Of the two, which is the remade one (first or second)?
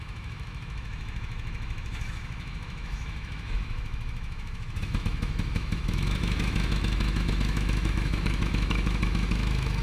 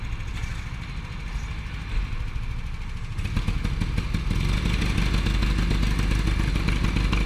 first